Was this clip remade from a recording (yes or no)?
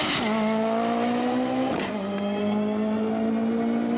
no